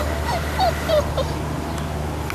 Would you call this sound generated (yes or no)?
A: no